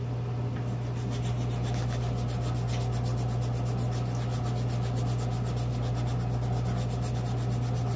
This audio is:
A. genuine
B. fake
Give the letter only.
A